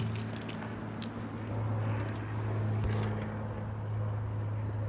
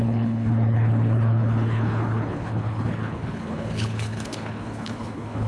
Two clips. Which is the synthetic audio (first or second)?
second